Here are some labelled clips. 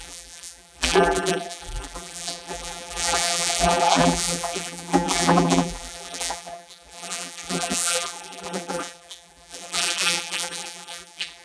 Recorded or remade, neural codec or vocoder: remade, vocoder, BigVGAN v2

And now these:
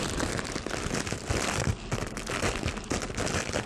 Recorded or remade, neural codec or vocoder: recorded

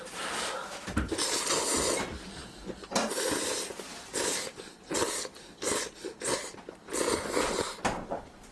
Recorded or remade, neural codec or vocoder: remade, vocoder, BigVGAN v2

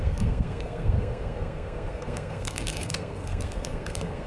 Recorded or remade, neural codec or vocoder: remade, codec, SNAC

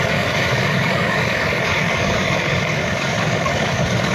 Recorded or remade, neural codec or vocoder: remade, codec, DAC